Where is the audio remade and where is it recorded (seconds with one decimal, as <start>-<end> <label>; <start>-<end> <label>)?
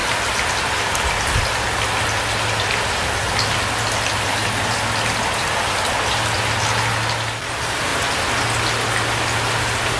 0.0-10.0 recorded